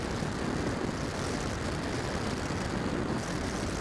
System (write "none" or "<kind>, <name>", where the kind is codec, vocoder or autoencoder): none